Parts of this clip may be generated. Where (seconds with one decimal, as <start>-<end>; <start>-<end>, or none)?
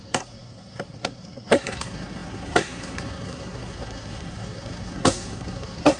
0.0-6.0